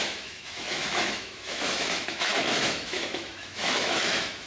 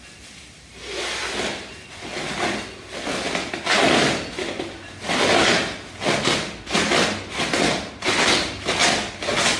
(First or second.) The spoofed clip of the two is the first